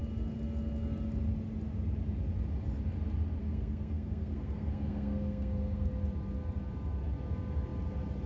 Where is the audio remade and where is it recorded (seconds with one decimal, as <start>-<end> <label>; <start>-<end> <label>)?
0.0-3.4 recorded; 3.4-5.9 remade; 5.9-8.3 recorded